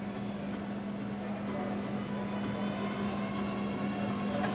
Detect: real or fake real